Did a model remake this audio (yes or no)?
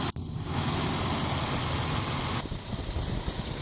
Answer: no